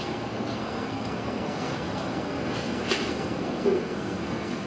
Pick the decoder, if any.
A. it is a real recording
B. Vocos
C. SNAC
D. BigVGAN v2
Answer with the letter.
C